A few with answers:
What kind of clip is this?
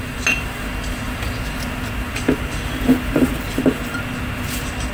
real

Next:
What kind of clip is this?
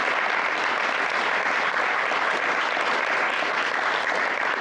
real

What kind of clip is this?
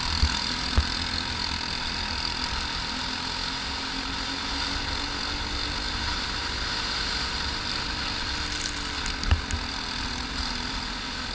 real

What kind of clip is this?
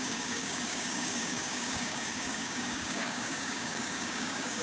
fake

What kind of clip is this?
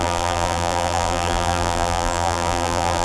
fake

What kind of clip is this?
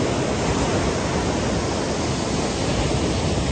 real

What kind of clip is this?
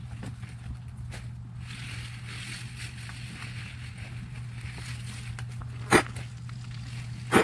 real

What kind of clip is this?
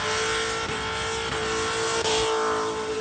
real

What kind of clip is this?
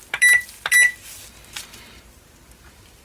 real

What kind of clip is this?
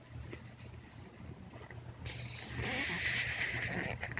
real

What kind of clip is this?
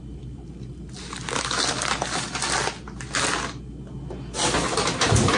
real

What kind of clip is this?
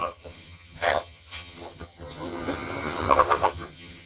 fake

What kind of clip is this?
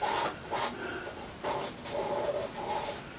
real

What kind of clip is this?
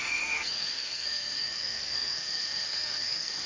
fake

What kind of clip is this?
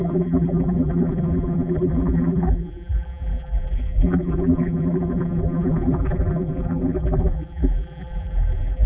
fake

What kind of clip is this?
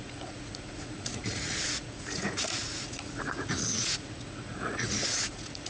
fake